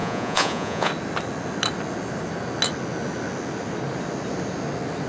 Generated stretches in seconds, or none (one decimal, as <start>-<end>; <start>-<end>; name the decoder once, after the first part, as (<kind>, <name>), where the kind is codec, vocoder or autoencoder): 0.0-0.9 (vocoder, Vocos)